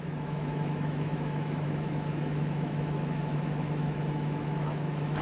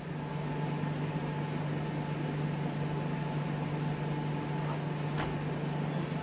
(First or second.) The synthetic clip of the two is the first